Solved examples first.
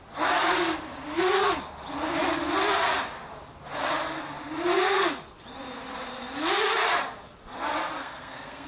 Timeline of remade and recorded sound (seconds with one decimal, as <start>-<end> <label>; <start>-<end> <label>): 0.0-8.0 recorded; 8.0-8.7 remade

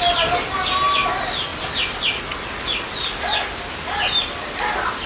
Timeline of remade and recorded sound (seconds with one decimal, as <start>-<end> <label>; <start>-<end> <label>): 0.0-5.1 recorded

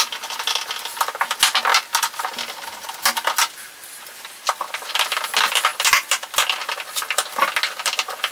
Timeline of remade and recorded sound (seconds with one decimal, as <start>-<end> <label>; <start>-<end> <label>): 0.0-8.3 recorded

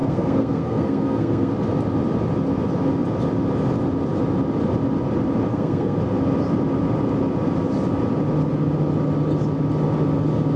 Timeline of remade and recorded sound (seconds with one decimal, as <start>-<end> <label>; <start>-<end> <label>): 0.0-1.5 remade; 1.5-5.5 recorded; 5.5-6.0 remade; 6.0-10.6 recorded